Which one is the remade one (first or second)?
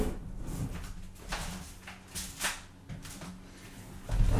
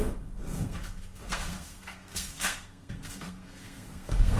second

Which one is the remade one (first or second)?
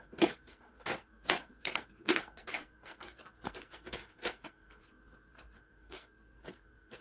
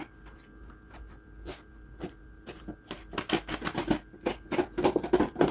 first